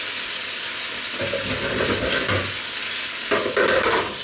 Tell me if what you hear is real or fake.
real